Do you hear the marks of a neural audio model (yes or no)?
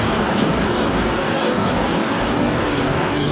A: yes